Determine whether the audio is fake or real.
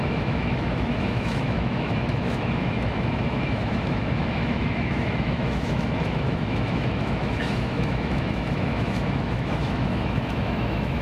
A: fake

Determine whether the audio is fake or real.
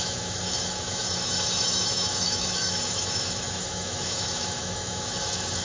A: fake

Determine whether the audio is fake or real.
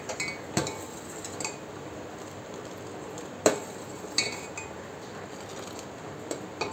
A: real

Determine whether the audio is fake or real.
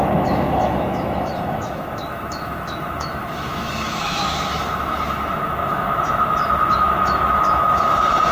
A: fake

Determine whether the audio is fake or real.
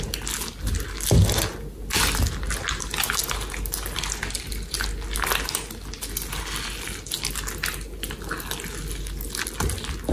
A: real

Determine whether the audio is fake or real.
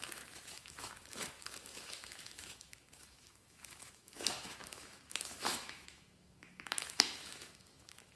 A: fake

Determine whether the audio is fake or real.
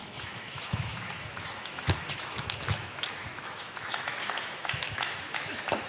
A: fake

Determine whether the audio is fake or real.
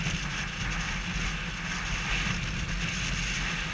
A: real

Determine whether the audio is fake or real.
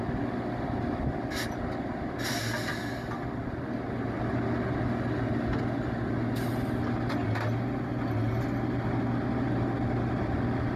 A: real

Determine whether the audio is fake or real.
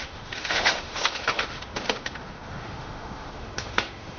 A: fake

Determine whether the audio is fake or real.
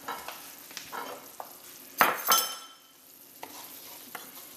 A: real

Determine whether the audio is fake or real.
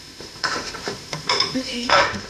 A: fake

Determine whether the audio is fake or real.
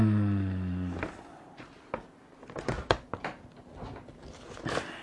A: real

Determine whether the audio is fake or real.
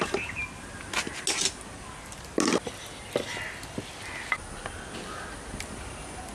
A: real